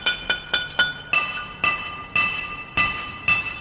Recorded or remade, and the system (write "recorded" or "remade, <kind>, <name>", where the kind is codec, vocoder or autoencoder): recorded